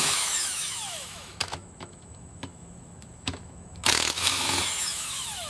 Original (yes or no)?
no